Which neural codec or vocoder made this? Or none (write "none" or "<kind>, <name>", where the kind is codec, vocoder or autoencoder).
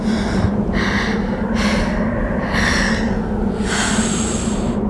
none